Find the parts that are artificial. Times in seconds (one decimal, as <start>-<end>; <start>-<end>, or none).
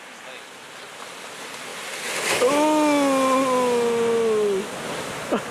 none